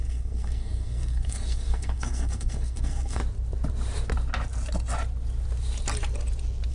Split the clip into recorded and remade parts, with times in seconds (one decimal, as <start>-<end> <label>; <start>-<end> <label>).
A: 0.0-3.2 remade; 3.2-6.7 recorded